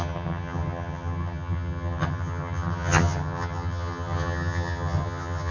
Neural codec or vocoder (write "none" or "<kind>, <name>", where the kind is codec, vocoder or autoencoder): vocoder, HiFi-GAN